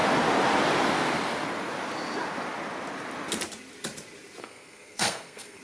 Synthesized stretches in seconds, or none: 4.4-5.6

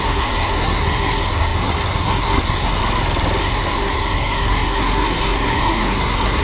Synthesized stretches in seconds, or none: 0.0-2.8; 3.4-6.4